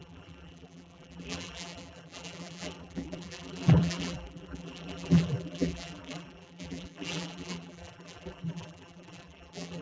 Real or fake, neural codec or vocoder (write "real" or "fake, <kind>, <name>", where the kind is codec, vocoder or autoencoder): fake, vocoder, BigVGAN v2